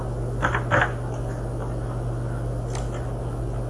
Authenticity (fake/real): real